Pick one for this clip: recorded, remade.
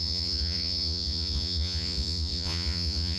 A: remade